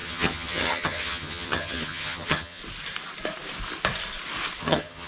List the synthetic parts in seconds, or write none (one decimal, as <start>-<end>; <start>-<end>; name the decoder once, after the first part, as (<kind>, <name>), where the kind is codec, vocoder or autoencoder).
0.0-2.6 (vocoder, HiFi-GAN); 4.6-5.1